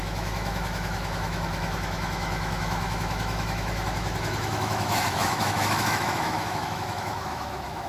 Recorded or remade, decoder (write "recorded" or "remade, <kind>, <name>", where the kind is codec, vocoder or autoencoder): remade, autoencoder, DAC-VAE